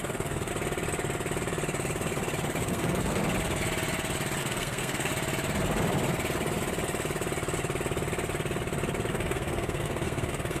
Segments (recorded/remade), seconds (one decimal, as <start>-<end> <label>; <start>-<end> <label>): 0.0-0.5 remade; 0.5-2.6 recorded; 2.6-3.2 remade; 3.2-4.4 recorded; 4.4-5.1 remade; 5.1-9.1 recorded; 9.1-10.6 remade

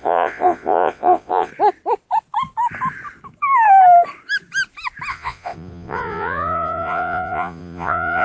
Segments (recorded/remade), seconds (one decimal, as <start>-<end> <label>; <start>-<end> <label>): 0.0-1.5 remade; 1.5-5.1 recorded; 5.1-8.2 remade

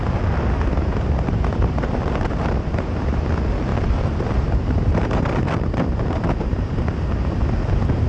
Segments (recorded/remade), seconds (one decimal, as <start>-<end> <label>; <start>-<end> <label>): 0.0-0.7 recorded; 0.7-3.3 remade; 3.3-3.7 recorded; 3.7-6.8 remade; 6.8-8.1 recorded

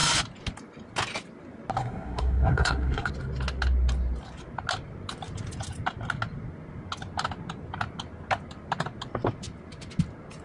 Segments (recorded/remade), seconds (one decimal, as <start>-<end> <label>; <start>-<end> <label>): 0.0-1.8 recorded; 1.8-3.1 remade; 3.1-10.4 recorded

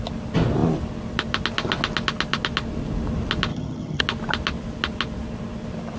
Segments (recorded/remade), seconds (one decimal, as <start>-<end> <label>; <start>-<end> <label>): 0.0-3.5 recorded; 3.5-4.0 remade; 4.0-6.0 recorded

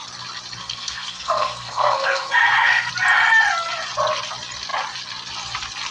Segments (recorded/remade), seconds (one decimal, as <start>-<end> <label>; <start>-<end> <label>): 0.0-0.6 recorded; 0.6-2.9 remade; 2.9-5.9 recorded

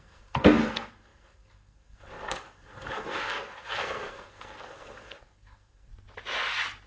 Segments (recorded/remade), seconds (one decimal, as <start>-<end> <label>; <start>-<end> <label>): 0.0-5.9 remade; 5.9-6.9 recorded

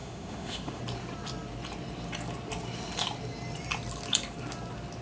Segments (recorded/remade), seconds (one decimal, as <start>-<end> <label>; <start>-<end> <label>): 0.0-0.8 remade; 0.8-5.0 recorded